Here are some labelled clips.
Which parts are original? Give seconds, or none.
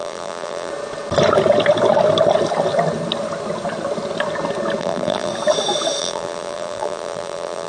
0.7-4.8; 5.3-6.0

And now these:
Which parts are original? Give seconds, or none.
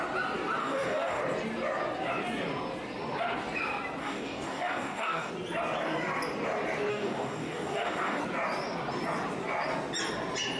0.0-0.6; 1.2-4.0; 5.3-6.9; 8.2-10.6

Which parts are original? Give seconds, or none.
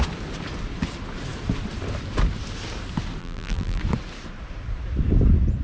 0.0-3.2; 3.8-5.6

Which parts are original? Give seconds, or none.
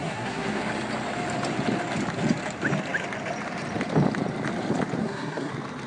0.6-5.0; 5.5-5.9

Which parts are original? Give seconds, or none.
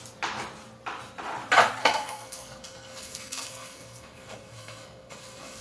0.0-1.8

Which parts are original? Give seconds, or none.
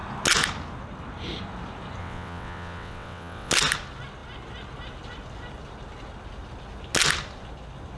0.0-2.0; 3.5-8.0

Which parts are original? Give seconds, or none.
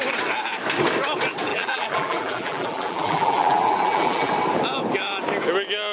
0.0-1.5; 4.3-5.9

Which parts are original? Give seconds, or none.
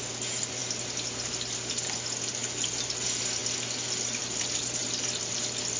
0.0-5.8